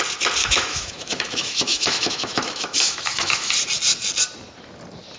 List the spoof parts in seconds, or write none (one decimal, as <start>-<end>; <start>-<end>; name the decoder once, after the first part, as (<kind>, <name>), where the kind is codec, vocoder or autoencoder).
0.4-3.5 (autoencoder, DAC-VAE)